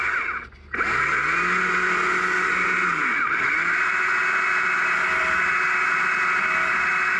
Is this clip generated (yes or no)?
no